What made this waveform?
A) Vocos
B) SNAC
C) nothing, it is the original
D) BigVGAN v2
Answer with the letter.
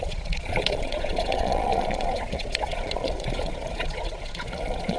A